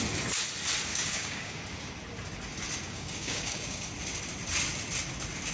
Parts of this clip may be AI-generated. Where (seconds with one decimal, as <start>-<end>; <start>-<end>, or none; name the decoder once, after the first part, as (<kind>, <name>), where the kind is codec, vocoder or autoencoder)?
0.9-1.6 (codec, DAC); 2.8-3.9